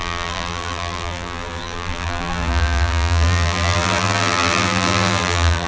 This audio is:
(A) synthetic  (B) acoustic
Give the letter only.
A